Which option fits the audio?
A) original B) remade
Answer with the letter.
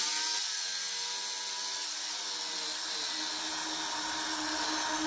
A